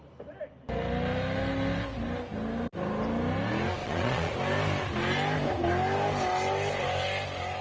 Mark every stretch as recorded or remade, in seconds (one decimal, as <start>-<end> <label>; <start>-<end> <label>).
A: 0.0-3.8 recorded; 3.8-4.3 remade; 4.3-7.6 recorded